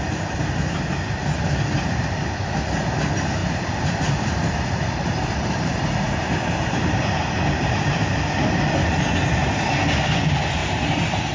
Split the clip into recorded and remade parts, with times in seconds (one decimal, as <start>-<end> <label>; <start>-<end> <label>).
0.0-3.4 recorded; 3.4-7.1 remade; 7.1-10.6 recorded; 10.6-11.3 remade

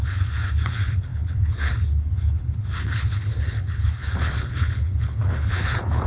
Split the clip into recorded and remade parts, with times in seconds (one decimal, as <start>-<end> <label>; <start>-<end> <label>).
0.0-6.1 remade

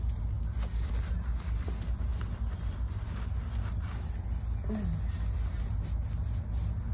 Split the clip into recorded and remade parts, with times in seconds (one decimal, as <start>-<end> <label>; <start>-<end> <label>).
0.0-6.9 recorded

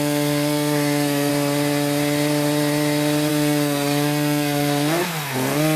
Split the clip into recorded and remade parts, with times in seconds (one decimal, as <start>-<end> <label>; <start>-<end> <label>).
0.0-1.3 remade; 1.3-3.3 recorded; 3.3-5.8 remade